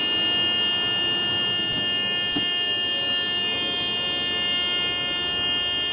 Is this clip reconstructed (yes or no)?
no